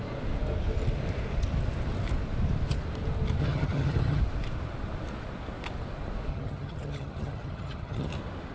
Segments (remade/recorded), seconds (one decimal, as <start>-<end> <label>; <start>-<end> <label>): 0.0-3.4 recorded; 3.4-4.2 remade; 4.2-6.3 recorded; 6.3-8.1 remade; 8.1-8.5 recorded